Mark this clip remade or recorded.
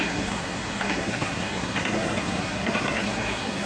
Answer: remade